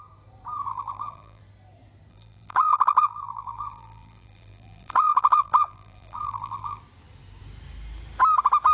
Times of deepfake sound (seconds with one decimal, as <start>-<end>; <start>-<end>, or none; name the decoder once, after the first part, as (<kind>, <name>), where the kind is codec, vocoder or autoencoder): 0.7-1.4 (vocoder, BigVGAN v2); 2.1-6.8